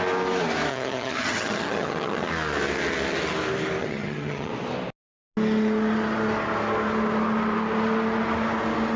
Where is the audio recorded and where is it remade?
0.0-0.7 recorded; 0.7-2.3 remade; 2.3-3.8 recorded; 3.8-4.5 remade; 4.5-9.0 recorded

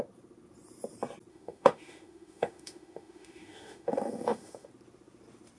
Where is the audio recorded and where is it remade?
0.0-1.3 recorded; 1.3-4.7 remade; 4.7-5.6 recorded

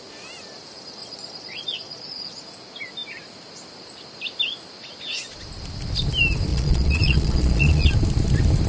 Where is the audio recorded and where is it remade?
0.0-1.0 recorded; 1.0-2.4 remade; 2.4-6.5 recorded; 6.5-7.9 remade; 7.9-8.7 recorded